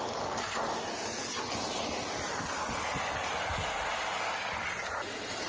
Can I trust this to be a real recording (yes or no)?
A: yes